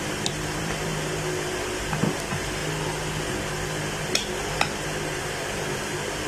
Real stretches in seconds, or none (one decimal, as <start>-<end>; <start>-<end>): 0.9-2.1; 2.6-4.5